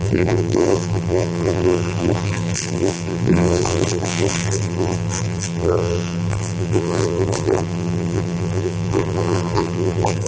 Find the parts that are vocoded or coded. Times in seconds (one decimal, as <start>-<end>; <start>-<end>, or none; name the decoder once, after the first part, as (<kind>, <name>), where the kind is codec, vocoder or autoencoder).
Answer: 0.0-10.3 (vocoder, BigVGAN v2)